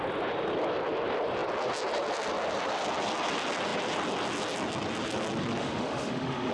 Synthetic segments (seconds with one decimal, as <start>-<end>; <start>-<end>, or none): 5.6-6.5